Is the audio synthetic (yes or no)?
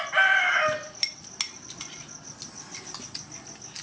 no